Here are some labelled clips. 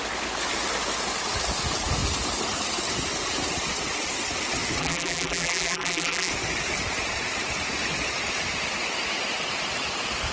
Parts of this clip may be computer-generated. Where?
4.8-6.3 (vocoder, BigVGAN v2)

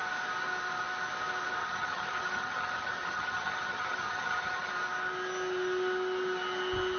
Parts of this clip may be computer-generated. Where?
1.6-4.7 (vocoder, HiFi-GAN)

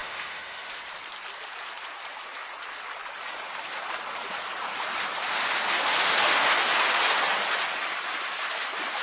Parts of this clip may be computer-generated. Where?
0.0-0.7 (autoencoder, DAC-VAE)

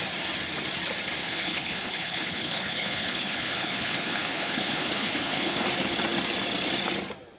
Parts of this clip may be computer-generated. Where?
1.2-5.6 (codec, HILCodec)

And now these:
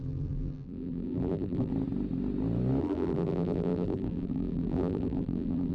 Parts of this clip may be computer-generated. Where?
0.0-1.7 (vocoder, BigVGAN v2); 2.8-5.7